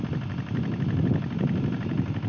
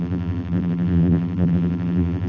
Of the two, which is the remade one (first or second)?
second